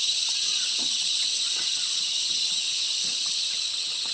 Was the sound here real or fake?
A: fake